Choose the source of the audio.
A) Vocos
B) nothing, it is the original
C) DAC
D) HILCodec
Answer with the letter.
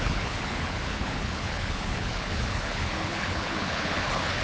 D